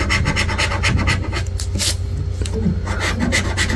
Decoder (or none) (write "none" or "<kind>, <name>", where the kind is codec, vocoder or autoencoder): none